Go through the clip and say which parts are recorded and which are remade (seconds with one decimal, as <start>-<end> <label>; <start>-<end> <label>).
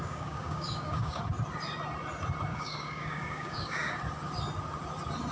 0.0-1.2 remade; 1.2-2.5 recorded; 2.5-3.9 remade; 3.9-5.3 recorded